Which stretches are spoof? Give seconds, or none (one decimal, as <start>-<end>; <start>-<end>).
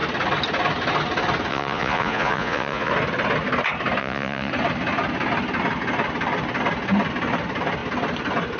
1.5-2.9; 4.0-4.5